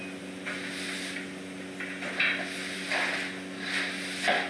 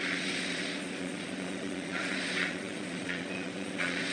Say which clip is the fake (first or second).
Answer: second